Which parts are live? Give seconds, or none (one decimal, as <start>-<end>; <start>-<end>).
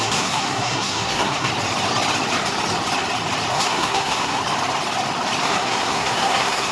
1.5-3.5; 4.4-5.4